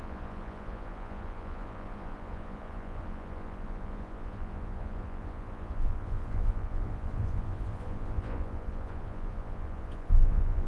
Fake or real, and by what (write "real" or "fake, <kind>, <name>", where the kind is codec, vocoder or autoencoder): fake, vocoder, Vocos